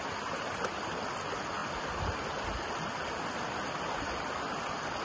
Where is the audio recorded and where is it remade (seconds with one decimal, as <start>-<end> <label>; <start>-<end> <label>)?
0.0-5.0 recorded